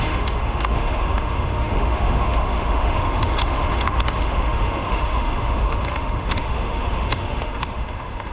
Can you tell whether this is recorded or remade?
remade